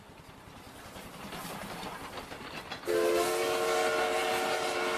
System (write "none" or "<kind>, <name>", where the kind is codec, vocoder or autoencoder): none